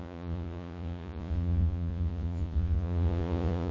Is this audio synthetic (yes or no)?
yes